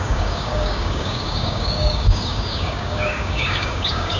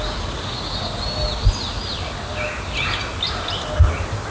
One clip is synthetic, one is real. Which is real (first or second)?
second